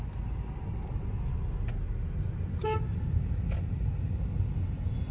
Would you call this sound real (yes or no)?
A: yes